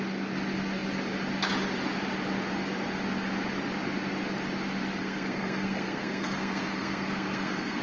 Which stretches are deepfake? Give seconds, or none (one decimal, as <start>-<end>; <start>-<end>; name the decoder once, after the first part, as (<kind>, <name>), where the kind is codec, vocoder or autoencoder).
5.0-7.8 (codec, SNAC)